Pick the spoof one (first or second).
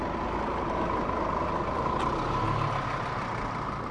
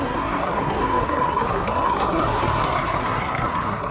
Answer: second